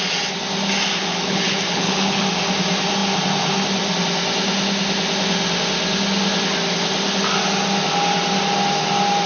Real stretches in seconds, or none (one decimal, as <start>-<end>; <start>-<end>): 0.0-1.1; 2.2-9.3